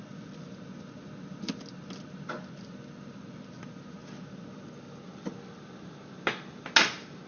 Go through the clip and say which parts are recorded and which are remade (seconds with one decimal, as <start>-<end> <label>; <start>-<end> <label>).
0.0-7.3 recorded